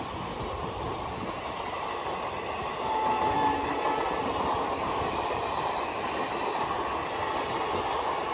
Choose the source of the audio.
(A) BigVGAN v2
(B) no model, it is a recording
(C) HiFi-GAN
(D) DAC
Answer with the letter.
B